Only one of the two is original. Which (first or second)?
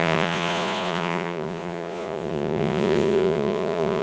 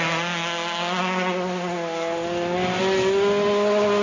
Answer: second